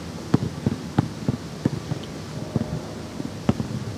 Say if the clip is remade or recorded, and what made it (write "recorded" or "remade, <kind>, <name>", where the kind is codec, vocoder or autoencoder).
recorded